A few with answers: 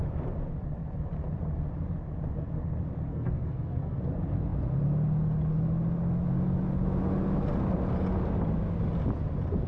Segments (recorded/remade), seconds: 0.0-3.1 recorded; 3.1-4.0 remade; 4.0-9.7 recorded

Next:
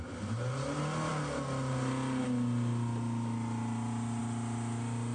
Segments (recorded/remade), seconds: 0.0-5.1 recorded

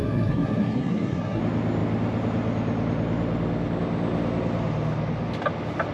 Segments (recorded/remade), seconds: 0.0-1.4 remade; 1.4-5.9 recorded

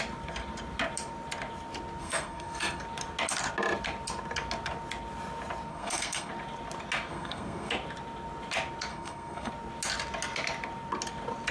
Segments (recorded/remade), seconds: 0.0-2.0 recorded; 2.0-2.8 remade; 2.8-5.7 recorded; 5.7-6.3 remade; 6.3-7.1 recorded; 7.1-7.7 remade; 7.7-8.9 recorded; 8.9-9.5 remade; 9.5-11.5 recorded

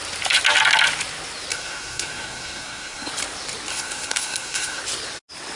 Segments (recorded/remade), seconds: 0.0-1.5 recorded; 1.5-3.1 remade; 3.1-3.7 recorded; 3.7-4.8 remade; 4.8-5.6 recorded

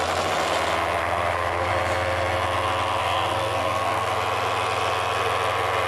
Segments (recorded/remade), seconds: 0.0-1.0 recorded; 1.0-1.7 remade; 1.7-3.0 recorded; 3.0-4.1 remade; 4.1-5.9 recorded

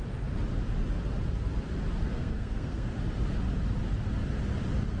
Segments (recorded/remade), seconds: 0.0-2.0 recorded; 2.0-2.9 remade; 2.9-5.0 recorded

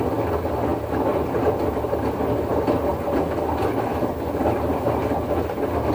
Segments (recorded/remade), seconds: 0.0-5.9 recorded